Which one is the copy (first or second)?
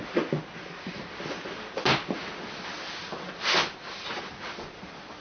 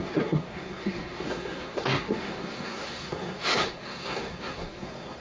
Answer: second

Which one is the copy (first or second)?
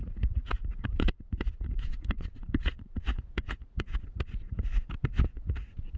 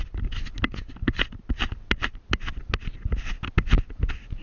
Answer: first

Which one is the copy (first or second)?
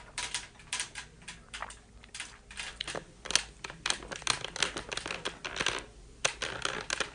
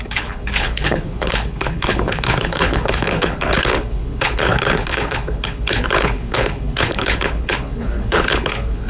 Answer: second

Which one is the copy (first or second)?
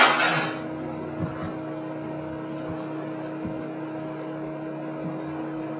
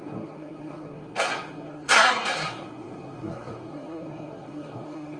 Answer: second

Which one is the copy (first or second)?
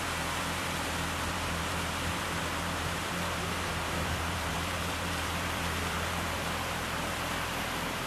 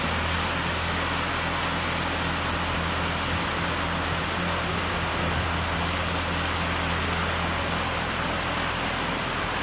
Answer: first